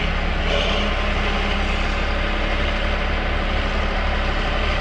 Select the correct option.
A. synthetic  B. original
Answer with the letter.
B